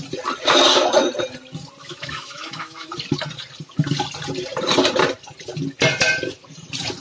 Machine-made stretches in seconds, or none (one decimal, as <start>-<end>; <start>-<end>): 1.8-2.9